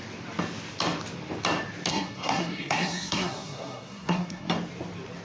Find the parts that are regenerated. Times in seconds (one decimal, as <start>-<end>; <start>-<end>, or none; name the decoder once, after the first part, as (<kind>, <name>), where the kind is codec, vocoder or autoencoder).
1.9-4.5 (codec, SNAC)